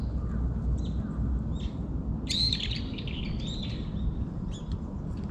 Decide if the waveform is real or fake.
real